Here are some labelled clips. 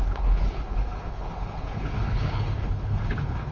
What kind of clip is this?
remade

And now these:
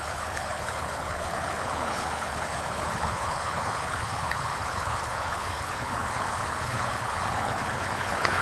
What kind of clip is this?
remade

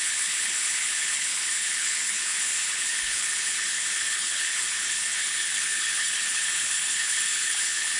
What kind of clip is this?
remade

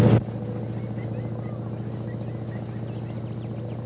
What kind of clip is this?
recorded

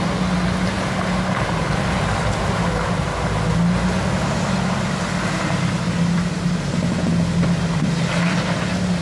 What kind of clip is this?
recorded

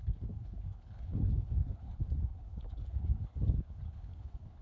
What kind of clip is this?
remade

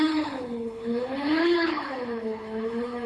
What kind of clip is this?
remade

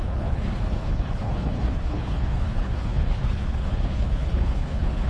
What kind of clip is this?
remade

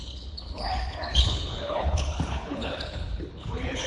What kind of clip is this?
remade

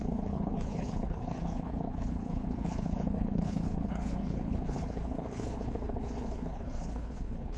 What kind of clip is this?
remade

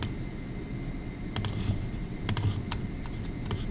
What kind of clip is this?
recorded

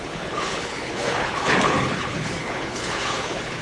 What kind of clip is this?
remade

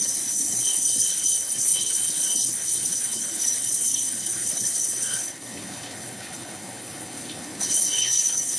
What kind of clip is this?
remade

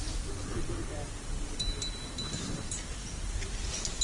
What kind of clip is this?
recorded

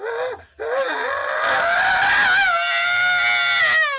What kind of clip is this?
recorded